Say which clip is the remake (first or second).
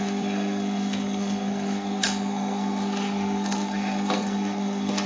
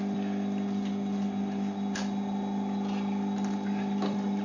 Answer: first